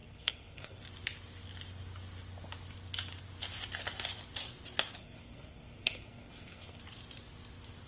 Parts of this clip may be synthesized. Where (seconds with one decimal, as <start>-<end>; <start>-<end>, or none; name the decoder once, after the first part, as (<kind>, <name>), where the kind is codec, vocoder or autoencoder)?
0.0-0.8 (codec, SNAC); 5.0-6.8